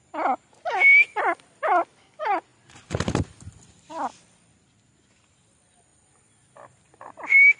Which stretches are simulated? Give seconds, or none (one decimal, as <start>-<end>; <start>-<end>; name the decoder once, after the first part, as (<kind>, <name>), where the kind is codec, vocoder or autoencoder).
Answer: none